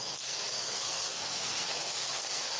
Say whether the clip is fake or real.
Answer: fake